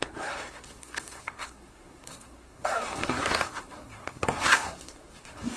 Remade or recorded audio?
remade